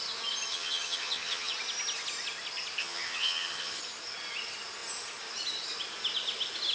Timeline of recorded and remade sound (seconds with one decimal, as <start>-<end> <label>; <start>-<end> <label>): 0.0-0.5 recorded; 0.5-1.5 remade; 1.5-2.8 recorded; 2.8-3.8 remade; 3.8-6.7 recorded